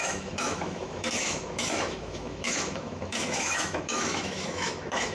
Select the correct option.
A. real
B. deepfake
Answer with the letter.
B